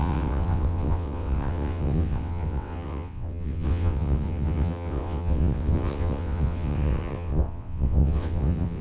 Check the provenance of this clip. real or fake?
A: fake